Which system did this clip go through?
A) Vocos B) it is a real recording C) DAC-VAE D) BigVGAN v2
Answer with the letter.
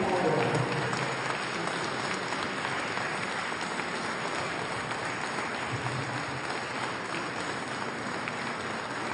B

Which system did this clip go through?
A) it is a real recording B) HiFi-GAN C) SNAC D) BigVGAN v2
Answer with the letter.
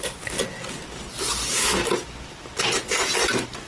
A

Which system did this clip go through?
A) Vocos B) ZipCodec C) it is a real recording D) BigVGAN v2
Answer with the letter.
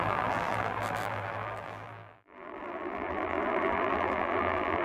D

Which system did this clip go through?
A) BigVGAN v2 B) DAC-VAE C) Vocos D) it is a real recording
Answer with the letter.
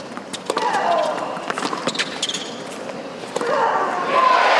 D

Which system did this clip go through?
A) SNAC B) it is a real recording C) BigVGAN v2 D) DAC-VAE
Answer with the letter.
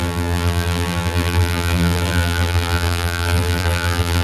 C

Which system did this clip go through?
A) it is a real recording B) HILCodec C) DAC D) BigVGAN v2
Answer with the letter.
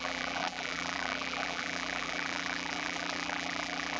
D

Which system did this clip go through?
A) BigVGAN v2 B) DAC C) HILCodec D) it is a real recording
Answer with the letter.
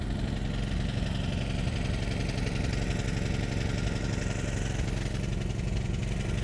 D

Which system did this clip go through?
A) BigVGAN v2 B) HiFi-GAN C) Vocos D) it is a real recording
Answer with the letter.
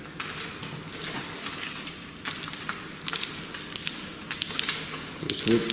D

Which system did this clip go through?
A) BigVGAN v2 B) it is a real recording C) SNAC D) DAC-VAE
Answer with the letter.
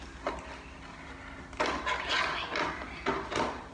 B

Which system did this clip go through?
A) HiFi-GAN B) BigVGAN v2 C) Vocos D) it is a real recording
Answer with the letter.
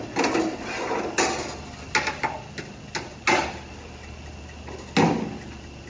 D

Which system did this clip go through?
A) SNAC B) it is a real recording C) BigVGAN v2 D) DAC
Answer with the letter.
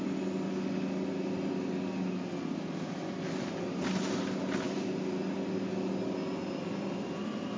B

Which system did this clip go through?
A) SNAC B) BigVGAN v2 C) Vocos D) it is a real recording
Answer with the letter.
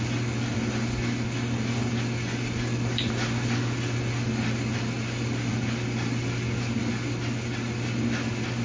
D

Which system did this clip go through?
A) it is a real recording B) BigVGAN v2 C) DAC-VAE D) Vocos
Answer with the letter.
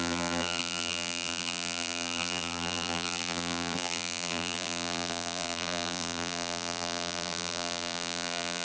B